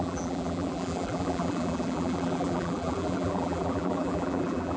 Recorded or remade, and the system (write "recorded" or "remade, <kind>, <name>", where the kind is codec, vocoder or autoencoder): remade, vocoder, BigVGAN v2